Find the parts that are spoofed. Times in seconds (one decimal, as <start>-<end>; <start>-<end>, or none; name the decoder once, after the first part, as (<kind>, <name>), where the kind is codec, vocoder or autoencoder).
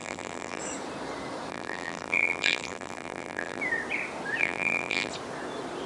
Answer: 0.0-0.6 (vocoder, BigVGAN v2); 1.5-3.6; 4.4-5.1